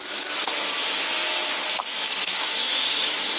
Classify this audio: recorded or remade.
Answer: remade